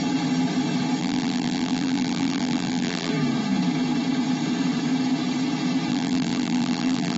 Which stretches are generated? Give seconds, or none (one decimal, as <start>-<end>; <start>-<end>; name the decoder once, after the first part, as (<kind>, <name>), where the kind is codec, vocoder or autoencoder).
1.0-3.1 (vocoder, BigVGAN v2); 5.9-7.2